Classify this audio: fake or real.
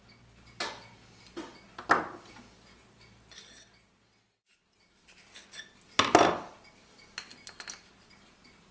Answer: real